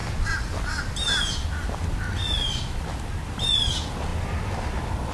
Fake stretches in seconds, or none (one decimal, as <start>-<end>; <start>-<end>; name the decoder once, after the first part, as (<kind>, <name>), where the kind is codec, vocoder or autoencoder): none